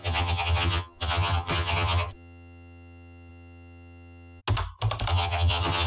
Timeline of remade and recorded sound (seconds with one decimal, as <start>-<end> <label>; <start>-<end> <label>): 0.0-4.4 remade; 4.4-5.1 recorded; 5.1-5.9 remade